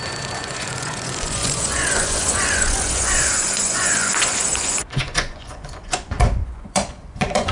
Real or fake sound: fake